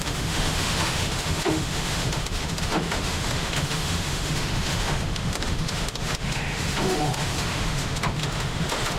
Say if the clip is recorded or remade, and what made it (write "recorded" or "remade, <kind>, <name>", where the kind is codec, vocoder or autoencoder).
remade, autoencoder, DAC-VAE